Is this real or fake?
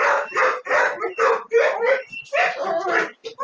real